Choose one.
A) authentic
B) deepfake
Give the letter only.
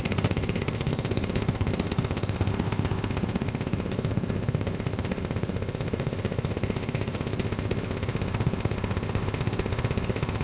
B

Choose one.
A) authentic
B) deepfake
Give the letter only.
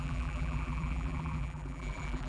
B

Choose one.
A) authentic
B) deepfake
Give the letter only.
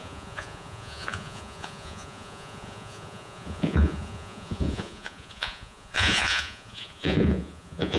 B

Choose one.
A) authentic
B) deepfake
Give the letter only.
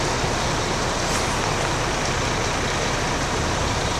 A